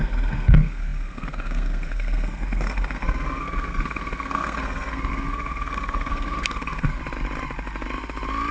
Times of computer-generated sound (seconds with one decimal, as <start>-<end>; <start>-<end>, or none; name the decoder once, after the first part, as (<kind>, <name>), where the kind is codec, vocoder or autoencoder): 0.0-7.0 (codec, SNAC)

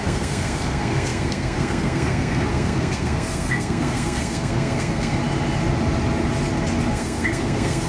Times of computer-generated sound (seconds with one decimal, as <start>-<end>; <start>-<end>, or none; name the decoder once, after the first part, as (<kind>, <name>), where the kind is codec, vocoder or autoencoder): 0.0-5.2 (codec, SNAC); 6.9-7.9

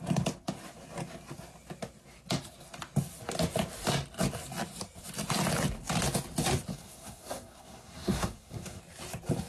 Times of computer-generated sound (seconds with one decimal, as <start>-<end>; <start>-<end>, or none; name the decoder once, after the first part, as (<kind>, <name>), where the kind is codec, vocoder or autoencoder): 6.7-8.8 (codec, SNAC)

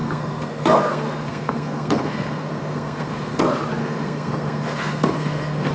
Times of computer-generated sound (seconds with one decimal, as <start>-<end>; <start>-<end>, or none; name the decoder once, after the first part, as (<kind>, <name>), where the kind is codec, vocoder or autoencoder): 0.0-3.4 (codec, SNAC); 3.8-5.7

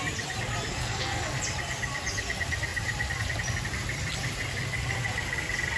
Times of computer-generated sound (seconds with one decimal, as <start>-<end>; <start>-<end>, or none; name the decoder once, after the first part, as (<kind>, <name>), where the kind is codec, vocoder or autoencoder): 0.7-1.4 (codec, SNAC)

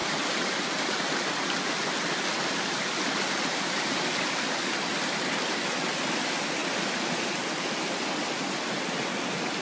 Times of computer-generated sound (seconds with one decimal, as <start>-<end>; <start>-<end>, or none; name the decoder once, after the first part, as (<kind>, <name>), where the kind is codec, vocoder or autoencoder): none

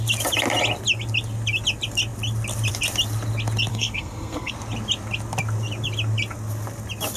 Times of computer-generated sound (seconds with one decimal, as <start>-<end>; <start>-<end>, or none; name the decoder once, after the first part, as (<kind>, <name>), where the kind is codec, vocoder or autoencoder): 3.7-4.5 (codec, SNAC)

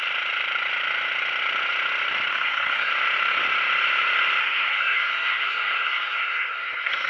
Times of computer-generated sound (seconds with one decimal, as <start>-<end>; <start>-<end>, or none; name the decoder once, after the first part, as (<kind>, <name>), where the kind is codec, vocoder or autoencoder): 2.3-2.9 (codec, SNAC); 4.4-7.1